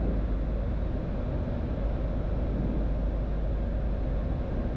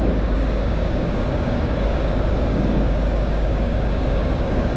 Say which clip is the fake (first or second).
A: second